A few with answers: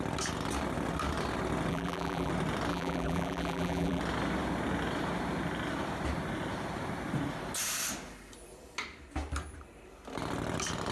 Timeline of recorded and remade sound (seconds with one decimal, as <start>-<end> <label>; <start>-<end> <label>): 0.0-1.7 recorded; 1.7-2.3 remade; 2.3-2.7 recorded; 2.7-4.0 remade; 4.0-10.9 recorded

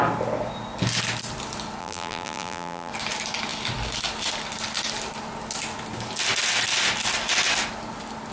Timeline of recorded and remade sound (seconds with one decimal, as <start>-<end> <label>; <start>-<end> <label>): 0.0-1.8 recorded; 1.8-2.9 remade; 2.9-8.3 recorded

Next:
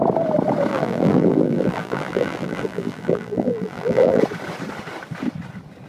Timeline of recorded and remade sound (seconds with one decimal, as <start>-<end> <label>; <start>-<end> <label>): 0.0-0.7 recorded; 0.7-4.2 remade; 4.2-5.9 recorded

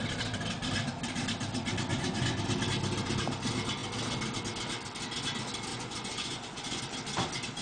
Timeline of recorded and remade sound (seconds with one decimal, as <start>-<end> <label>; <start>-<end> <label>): 0.0-1.9 recorded; 1.9-2.4 remade; 2.4-5.7 recorded; 5.7-6.8 remade; 6.8-7.6 recorded